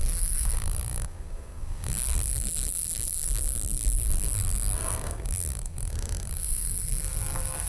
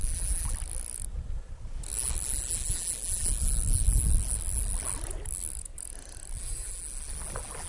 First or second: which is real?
second